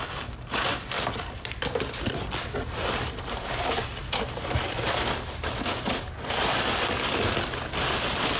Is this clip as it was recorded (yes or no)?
yes